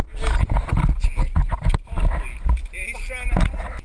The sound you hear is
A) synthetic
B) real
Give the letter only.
B